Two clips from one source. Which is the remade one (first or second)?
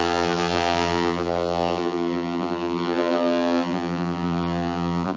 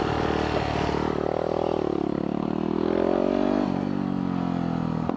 first